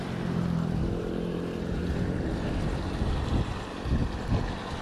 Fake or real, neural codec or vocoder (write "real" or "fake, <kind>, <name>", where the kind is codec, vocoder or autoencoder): fake, vocoder, BigVGAN v2